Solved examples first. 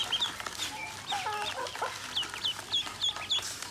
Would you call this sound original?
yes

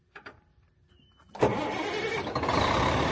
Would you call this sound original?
yes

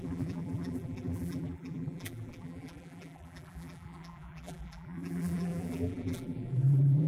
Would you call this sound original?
no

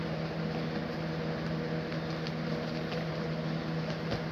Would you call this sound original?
yes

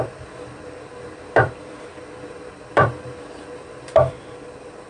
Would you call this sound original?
no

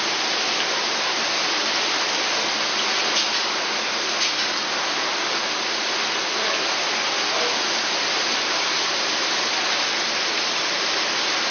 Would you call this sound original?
yes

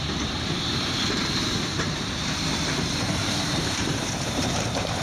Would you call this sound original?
no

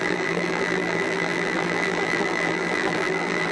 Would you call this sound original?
no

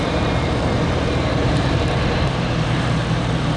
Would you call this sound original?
no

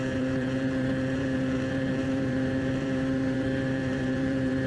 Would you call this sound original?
no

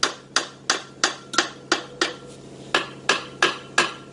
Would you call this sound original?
yes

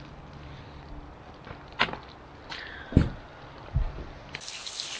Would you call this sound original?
yes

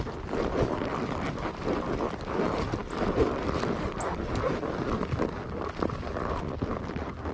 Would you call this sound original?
yes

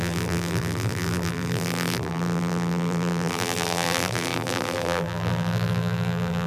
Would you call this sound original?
no